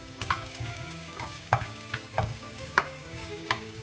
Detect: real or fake fake